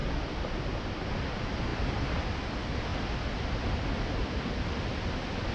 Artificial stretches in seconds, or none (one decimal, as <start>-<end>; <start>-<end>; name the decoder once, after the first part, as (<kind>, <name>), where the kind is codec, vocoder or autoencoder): 0.0-1.1 (vocoder, BigVGAN v2); 1.7-2.5; 2.9-5.5